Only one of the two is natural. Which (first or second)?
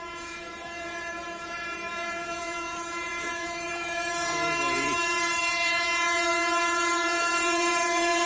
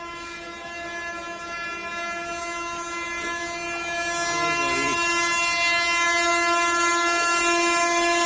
second